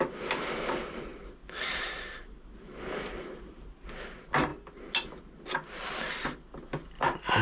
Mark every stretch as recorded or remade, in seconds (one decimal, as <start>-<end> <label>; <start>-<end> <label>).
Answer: 0.0-1.4 recorded; 1.4-2.4 remade; 2.4-7.4 recorded